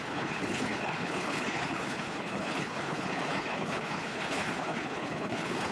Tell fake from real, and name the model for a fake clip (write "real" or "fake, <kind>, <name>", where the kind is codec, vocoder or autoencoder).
fake, codec, HILCodec